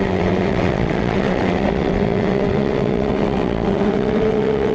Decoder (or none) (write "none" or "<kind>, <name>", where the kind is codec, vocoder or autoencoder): vocoder, WaveNeXt